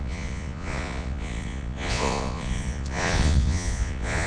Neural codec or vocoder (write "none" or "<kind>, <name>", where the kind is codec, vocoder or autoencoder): vocoder, Vocos